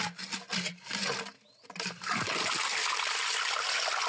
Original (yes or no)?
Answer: yes